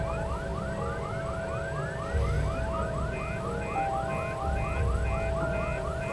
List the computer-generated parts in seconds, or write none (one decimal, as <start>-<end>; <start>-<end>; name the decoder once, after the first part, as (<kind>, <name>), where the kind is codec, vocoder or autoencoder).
none